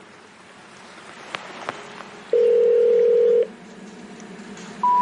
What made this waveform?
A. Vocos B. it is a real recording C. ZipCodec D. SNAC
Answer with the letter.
B